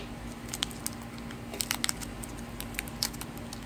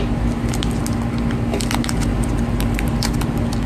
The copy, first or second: second